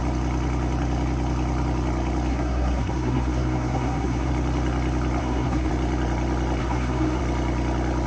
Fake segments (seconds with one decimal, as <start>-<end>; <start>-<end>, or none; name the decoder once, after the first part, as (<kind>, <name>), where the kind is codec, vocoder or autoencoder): 2.3-4.3 (codec, SNAC); 5.2-5.7; 6.6-7.2